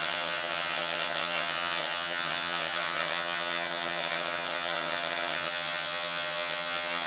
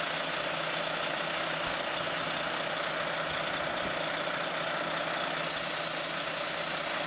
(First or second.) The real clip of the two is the second